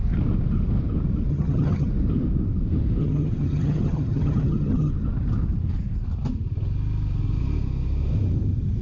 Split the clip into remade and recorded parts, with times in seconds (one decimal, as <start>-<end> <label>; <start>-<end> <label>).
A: 0.0-1.3 recorded; 1.3-1.9 remade; 1.9-3.0 recorded; 3.0-4.9 remade; 4.9-8.8 recorded